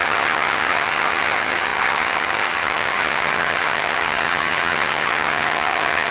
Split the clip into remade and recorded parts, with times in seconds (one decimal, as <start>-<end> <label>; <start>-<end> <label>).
0.0-6.1 remade